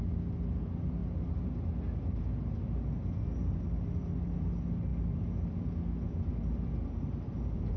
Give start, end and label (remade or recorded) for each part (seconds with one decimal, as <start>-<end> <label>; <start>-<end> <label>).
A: 0.0-7.8 recorded